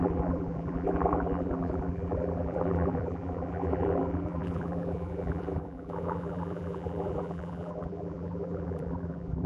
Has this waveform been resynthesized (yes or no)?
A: yes